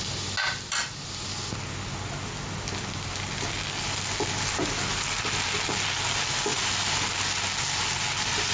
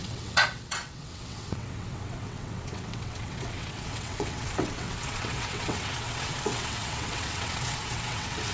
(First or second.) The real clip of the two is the first